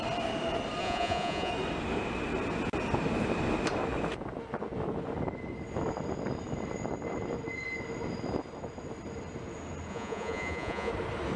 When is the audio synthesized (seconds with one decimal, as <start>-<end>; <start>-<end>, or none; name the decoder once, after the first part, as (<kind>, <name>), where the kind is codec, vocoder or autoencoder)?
0.8-1.5 (vocoder, Vocos); 9.9-10.9